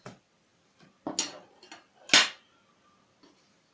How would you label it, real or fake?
real